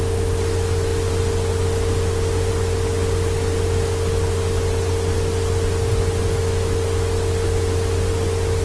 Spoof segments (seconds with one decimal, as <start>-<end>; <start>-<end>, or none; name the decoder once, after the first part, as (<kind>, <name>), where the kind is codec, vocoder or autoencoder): none